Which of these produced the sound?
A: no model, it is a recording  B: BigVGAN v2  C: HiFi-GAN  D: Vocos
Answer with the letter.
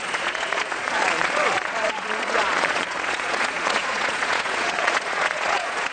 D